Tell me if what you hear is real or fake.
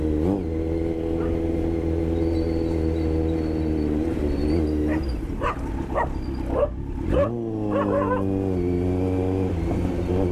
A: real